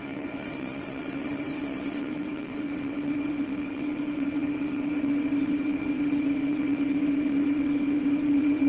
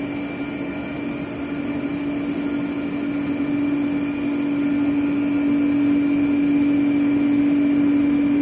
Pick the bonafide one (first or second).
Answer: second